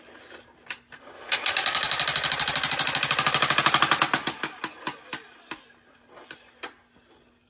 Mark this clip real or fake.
real